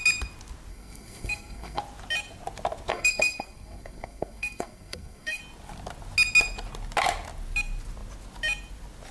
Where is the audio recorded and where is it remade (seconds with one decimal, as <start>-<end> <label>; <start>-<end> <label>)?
0.0-0.7 recorded; 0.7-1.8 remade; 1.8-2.9 recorded; 2.9-5.4 remade; 5.4-9.1 recorded